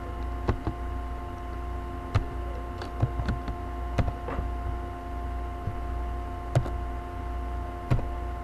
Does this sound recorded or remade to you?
recorded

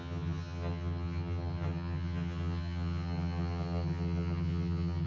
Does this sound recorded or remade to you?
remade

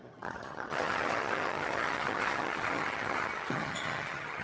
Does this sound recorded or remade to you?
remade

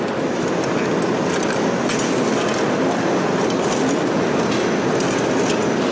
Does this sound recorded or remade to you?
recorded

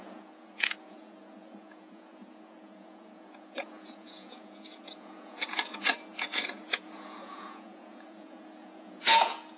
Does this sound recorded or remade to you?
remade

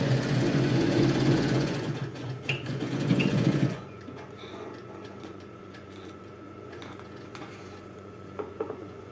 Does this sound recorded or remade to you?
remade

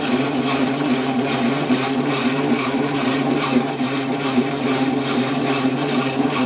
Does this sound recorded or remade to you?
remade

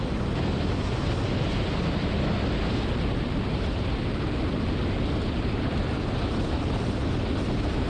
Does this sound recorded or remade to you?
recorded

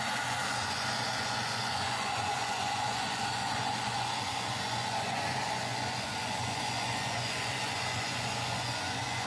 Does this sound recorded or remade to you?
remade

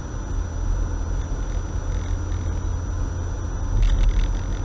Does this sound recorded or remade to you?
recorded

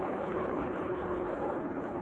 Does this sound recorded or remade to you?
remade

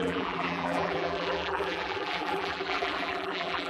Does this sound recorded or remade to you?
remade